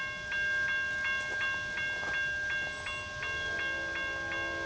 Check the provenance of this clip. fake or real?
real